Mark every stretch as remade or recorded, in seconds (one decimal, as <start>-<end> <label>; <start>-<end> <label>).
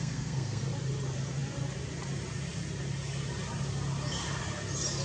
0.0-0.6 remade; 0.6-5.0 recorded